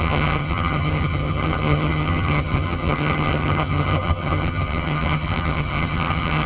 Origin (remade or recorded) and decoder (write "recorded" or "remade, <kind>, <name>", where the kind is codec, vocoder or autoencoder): remade, vocoder, HiFi-GAN